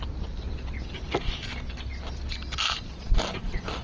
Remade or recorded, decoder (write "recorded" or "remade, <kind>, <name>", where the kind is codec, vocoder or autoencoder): recorded